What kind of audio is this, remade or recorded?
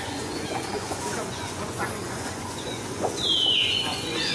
remade